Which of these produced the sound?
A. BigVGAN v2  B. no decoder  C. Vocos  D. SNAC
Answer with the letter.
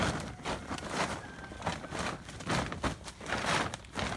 B